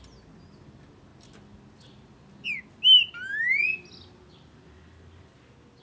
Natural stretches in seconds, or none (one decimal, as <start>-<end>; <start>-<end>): 0.0-5.8